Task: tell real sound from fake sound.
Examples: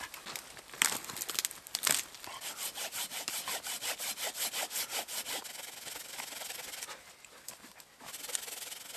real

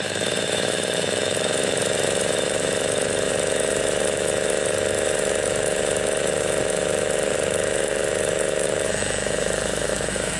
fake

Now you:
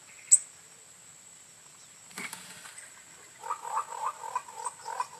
real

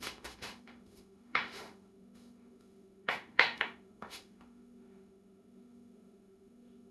fake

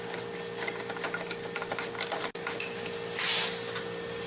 real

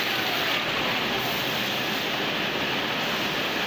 real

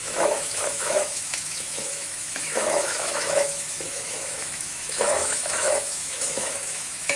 fake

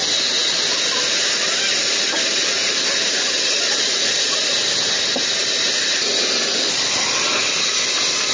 real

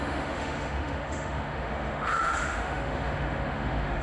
fake